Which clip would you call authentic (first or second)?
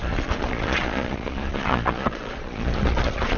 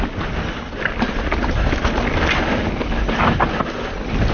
second